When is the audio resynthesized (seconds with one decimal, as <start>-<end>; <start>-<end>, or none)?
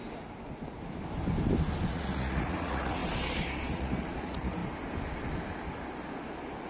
1.9-3.0; 3.7-4.6